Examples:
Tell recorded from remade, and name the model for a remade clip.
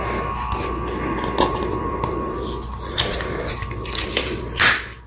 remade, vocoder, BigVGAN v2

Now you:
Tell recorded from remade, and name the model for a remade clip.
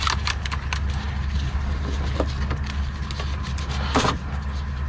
recorded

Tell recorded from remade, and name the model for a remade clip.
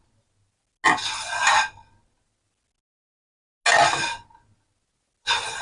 recorded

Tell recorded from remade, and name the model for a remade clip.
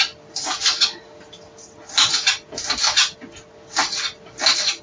recorded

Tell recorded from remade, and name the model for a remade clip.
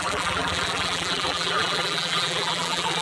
remade, vocoder, BigVGAN v2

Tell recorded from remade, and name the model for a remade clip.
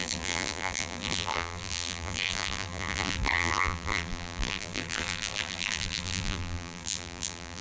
remade, vocoder, BigVGAN v2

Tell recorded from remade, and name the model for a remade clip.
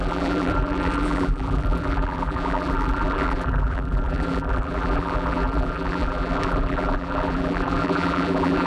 remade, vocoder, BigVGAN v2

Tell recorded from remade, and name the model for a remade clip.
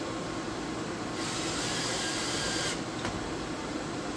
remade, vocoder, BigVGAN v2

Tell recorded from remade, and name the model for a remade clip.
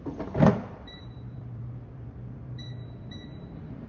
remade, vocoder, BigVGAN v2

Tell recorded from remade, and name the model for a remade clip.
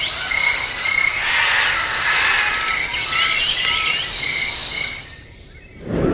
recorded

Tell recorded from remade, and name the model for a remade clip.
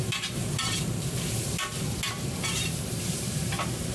remade, vocoder, BigVGAN v2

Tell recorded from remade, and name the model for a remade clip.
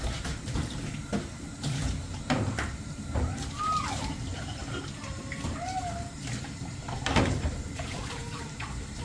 remade, vocoder, BigVGAN v2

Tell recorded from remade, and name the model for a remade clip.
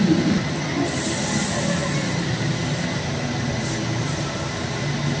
recorded